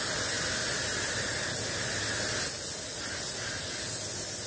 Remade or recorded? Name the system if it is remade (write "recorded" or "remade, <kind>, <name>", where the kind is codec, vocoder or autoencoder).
recorded